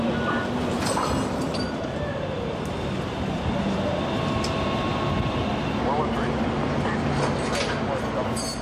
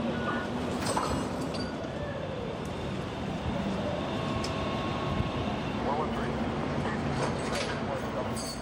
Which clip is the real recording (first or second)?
first